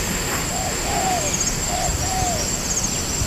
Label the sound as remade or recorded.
recorded